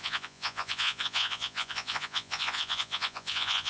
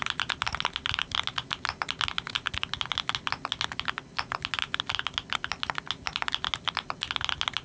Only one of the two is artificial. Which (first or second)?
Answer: first